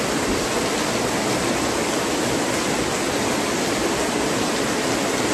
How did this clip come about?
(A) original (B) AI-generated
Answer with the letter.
A